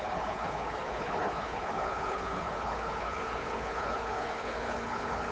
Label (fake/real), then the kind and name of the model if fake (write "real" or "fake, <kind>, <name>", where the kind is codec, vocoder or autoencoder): fake, codec, HILCodec